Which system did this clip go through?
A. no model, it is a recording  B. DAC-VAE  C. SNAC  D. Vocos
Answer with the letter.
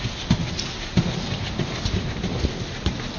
A